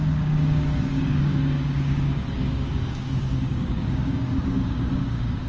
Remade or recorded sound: remade